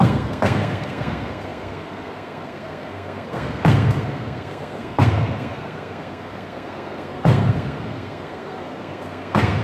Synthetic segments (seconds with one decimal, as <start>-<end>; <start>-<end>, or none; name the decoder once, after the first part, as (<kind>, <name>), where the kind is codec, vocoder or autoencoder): 0.0-9.6 (codec, SNAC)